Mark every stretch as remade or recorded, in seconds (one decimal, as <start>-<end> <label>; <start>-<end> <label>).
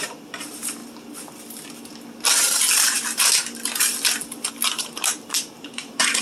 0.0-0.8 remade; 0.8-4.5 recorded; 4.5-6.2 remade